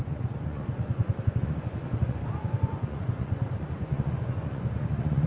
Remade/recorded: remade